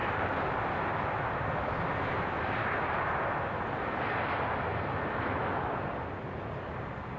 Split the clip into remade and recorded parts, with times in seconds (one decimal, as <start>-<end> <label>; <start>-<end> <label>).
0.0-7.2 recorded